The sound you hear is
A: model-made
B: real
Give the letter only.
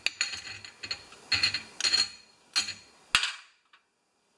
B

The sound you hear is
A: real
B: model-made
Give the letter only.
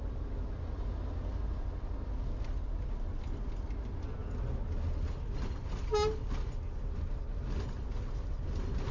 A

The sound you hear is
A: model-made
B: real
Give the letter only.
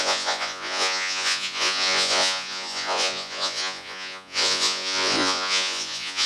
A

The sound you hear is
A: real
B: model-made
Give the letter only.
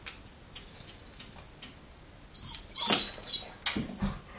A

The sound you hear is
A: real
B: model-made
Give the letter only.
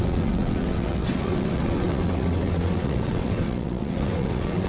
B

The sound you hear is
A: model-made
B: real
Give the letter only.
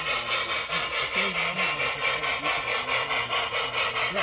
B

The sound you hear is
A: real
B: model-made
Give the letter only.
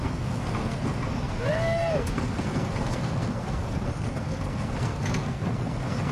B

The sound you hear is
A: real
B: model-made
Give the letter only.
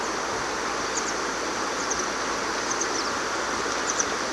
A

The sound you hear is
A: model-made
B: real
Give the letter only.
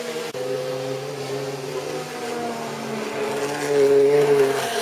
B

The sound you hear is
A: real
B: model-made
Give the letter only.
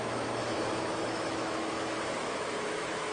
B